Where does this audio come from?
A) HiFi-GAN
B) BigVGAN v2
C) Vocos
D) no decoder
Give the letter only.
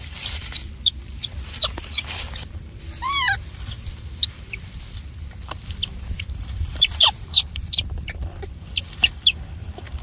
B